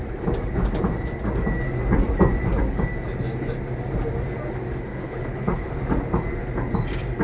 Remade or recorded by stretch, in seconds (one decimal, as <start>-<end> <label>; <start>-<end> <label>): 0.0-4.9 recorded; 4.9-5.8 remade; 5.8-7.2 recorded